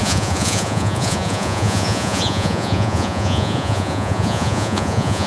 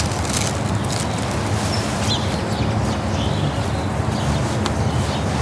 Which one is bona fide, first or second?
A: second